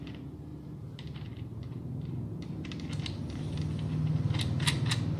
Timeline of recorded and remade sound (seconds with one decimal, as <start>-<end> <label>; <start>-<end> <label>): 0.0-5.2 recorded

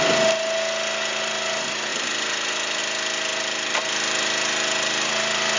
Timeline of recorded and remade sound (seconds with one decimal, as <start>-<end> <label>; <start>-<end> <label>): 0.0-5.6 recorded

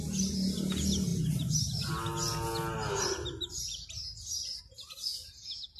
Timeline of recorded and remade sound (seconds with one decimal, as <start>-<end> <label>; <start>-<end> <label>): 0.0-5.1 recorded; 5.1-5.8 remade

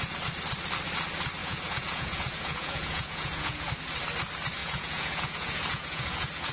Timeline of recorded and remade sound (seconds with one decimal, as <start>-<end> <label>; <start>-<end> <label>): 0.0-1.4 recorded; 1.4-3.7 remade; 3.7-4.6 recorded; 4.6-6.5 remade